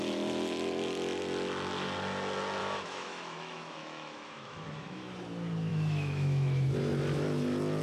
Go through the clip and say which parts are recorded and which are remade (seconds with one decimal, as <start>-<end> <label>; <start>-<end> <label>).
0.0-2.6 recorded; 2.6-5.1 remade; 5.1-5.7 recorded; 5.7-6.7 remade; 6.7-7.8 recorded